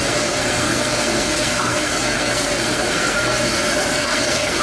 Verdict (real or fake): fake